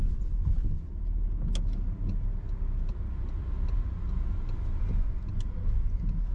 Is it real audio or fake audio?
real